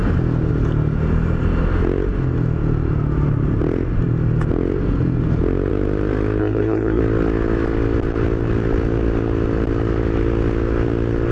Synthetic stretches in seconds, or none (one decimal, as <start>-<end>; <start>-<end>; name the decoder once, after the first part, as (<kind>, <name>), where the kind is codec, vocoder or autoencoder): 6.4-7.0 (codec, SNAC)

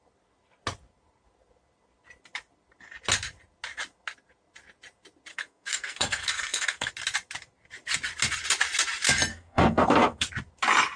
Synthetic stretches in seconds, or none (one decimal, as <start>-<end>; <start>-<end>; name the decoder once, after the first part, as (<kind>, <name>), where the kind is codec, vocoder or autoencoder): 5.3-6.9 (codec, SNAC); 9.3-10.3

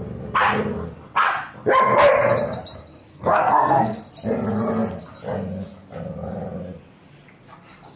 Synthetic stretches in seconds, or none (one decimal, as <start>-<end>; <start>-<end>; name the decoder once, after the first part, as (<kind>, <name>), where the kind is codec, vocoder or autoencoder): 3.1-4.0 (codec, SNAC)

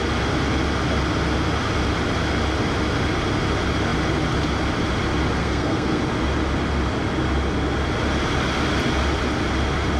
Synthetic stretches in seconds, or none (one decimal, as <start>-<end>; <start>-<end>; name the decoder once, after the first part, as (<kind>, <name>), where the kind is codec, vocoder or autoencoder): 5.4-6.0 (codec, SNAC)

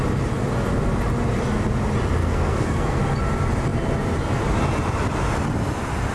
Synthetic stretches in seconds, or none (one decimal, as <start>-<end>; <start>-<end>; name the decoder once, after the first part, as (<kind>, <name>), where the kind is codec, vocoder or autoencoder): 2.2-3.0 (codec, SNAC)

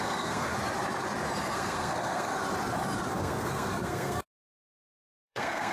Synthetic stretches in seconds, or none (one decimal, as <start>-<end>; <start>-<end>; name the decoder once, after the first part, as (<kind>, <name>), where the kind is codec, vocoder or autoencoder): 0.0-0.5 (codec, SNAC); 1.4-2.3; 3.1-5.7

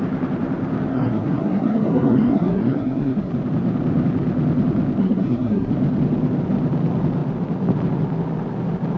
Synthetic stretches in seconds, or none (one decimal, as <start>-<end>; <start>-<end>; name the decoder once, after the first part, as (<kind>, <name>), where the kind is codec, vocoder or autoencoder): 0.9-3.3 (codec, SNAC); 5.0-5.7